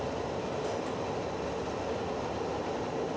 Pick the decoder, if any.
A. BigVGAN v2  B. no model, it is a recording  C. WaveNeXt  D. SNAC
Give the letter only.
B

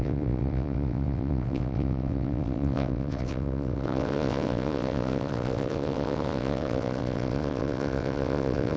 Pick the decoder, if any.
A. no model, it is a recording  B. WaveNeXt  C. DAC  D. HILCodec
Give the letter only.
B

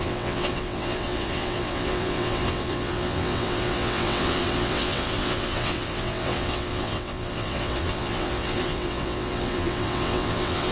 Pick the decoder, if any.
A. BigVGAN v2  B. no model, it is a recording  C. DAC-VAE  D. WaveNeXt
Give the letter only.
D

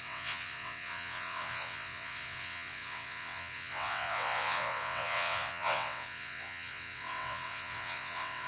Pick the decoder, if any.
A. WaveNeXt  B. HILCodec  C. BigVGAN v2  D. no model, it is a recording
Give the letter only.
A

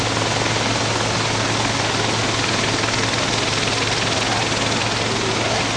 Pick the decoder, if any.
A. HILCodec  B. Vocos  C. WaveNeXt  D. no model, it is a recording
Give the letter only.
D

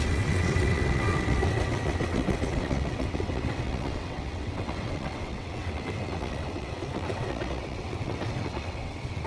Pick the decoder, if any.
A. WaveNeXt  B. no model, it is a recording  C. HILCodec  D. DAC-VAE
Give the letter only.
A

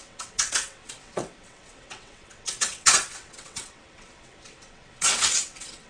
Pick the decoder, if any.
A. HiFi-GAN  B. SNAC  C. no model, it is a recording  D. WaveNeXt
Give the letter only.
D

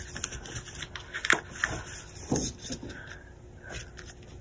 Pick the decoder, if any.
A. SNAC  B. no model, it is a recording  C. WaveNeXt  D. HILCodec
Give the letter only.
B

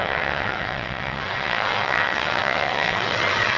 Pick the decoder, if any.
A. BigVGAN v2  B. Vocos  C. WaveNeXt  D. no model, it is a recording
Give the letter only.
C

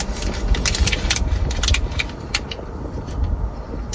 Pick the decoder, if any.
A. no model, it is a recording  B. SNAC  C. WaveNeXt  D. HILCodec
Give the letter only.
A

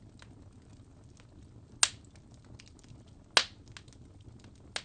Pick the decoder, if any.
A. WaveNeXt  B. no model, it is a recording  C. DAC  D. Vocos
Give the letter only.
B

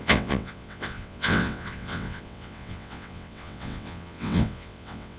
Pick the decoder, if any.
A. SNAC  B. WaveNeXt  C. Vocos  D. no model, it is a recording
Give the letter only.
B